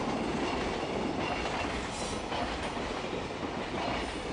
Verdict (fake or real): real